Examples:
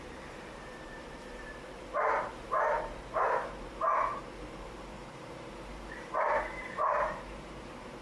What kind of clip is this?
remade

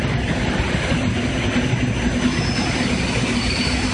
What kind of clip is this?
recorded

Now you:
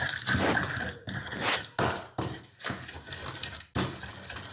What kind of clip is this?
recorded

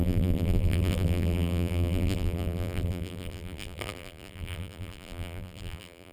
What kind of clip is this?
remade